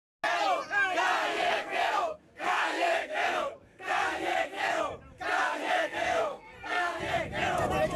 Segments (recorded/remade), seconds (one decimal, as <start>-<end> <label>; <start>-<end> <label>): 0.0-1.3 recorded; 1.3-4.8 remade; 4.8-5.4 recorded; 5.4-7.0 remade; 7.0-8.0 recorded